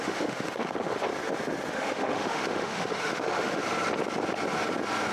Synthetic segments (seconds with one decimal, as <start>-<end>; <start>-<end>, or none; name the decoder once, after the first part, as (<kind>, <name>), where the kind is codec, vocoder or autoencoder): 0.0-1.1 (autoencoder, DAC-VAE); 1.7-3.6